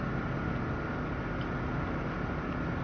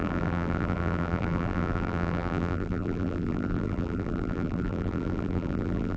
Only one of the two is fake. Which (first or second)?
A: second